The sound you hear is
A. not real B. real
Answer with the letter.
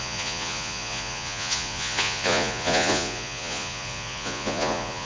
A